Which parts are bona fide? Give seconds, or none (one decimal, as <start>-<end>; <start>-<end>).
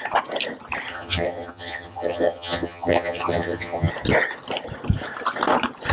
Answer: 0.0-0.9; 3.9-5.9